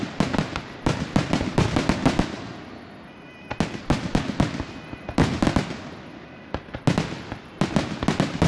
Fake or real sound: real